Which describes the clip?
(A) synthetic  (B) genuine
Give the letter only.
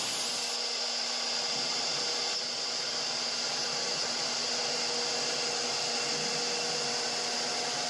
B